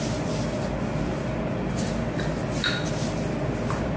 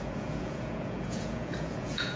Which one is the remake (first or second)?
second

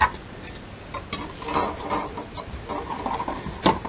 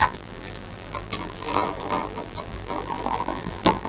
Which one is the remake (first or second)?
second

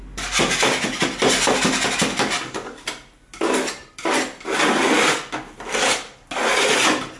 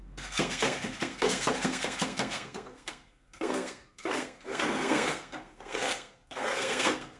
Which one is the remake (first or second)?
second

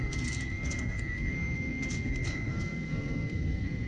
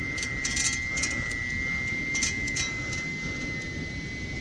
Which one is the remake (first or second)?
first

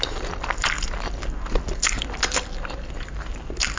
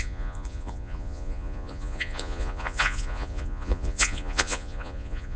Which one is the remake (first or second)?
second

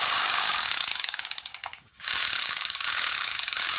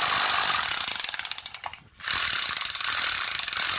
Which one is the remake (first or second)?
first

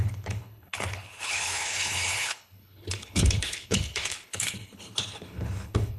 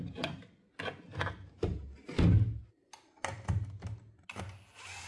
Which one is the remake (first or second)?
first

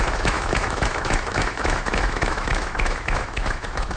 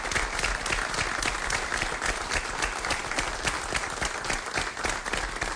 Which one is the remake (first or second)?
first